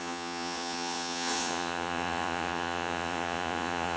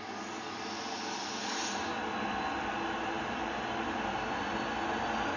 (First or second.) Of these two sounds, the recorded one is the second